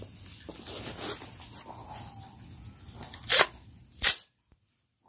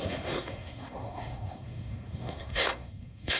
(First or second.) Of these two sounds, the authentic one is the first